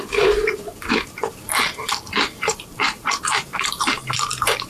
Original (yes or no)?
no